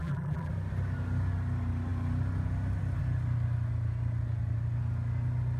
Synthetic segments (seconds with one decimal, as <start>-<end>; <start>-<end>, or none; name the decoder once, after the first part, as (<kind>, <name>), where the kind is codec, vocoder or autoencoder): 0.0-0.5 (vocoder, BigVGAN v2)